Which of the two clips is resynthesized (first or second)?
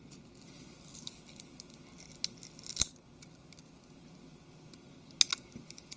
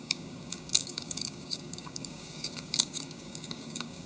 second